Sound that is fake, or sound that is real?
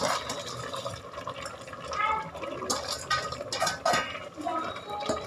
real